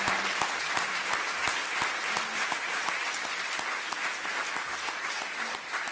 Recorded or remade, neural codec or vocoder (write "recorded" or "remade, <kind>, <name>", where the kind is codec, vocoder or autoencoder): recorded